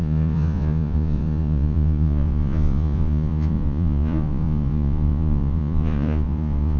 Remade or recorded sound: remade